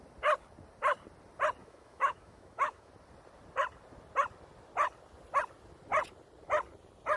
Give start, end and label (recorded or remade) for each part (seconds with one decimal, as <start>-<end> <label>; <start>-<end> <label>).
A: 0.0-1.6 recorded; 1.6-2.9 remade; 2.9-7.2 recorded